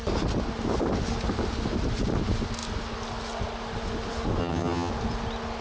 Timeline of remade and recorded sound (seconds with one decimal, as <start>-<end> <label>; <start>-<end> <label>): 0.0-4.4 recorded; 4.4-4.9 remade; 4.9-5.6 recorded